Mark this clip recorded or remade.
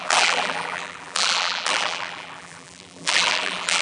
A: remade